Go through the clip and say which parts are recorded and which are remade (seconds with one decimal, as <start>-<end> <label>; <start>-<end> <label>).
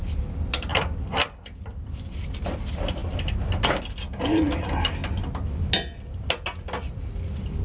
0.0-7.6 recorded